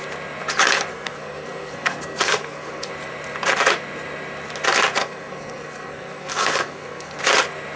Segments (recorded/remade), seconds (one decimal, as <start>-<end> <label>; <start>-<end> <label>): 0.0-0.9 recorded; 0.9-2.9 remade; 2.9-5.0 recorded; 5.0-7.2 remade; 7.2-7.8 recorded